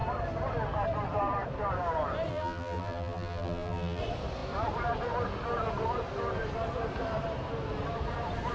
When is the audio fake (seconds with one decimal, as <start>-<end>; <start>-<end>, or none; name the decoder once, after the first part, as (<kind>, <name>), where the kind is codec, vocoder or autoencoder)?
2.3-4.0 (vocoder, BigVGAN v2)